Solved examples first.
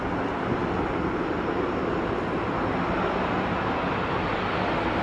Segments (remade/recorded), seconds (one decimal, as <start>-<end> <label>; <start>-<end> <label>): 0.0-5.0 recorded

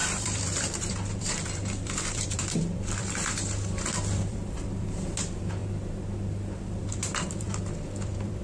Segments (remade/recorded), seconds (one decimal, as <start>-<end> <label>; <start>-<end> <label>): 0.0-5.6 remade; 5.6-6.8 recorded; 6.8-8.4 remade

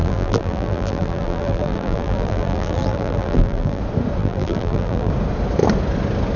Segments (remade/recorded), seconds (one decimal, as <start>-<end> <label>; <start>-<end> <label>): 0.0-3.8 remade; 3.8-4.2 recorded; 4.2-5.1 remade; 5.1-6.4 recorded

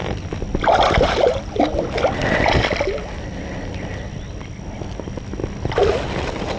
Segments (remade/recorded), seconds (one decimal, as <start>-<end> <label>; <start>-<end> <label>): 0.0-6.6 recorded